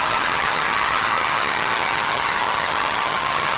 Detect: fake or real fake